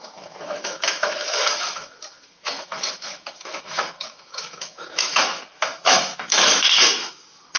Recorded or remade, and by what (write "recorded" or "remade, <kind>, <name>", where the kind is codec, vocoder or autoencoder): remade, autoencoder, DAC-VAE